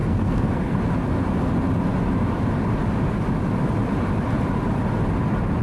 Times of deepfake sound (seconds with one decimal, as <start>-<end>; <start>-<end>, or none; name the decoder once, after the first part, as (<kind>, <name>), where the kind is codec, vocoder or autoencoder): 0.0-0.8 (codec, SNAC)